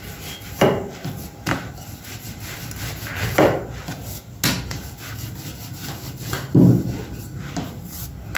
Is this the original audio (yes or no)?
yes